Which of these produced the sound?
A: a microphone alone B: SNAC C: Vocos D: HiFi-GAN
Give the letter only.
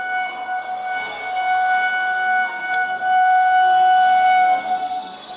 B